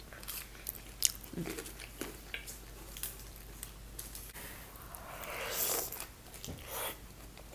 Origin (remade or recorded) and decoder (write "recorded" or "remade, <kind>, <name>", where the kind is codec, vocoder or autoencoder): recorded